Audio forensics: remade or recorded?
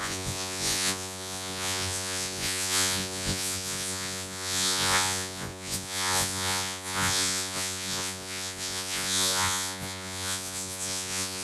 remade